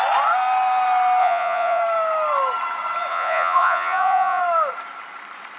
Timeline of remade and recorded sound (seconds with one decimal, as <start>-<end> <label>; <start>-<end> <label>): 0.0-1.2 recorded; 1.2-1.8 remade; 1.8-3.1 recorded; 3.1-4.4 remade; 4.4-5.6 recorded